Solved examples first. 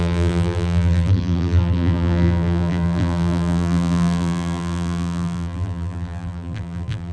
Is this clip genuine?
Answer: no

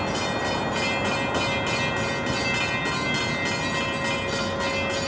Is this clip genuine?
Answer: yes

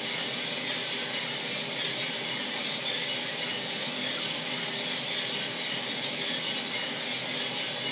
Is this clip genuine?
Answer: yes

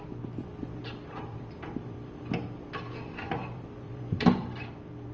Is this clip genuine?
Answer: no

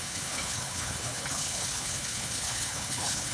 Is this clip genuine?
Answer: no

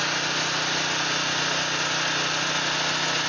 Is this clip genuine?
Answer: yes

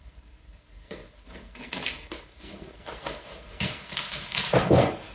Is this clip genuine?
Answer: no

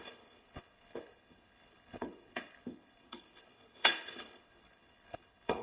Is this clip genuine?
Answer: no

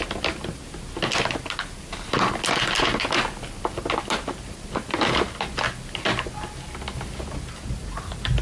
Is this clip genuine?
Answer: yes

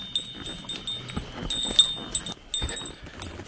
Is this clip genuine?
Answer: yes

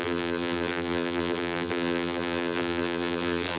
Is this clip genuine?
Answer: no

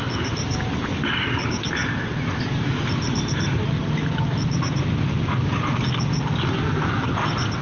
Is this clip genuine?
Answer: yes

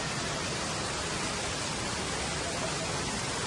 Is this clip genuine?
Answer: yes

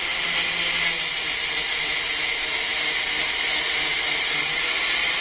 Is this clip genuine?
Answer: yes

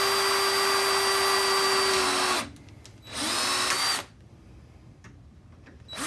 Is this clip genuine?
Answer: yes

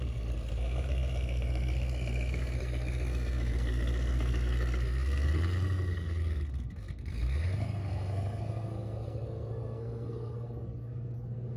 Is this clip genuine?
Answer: no